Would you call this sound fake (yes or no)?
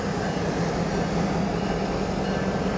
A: no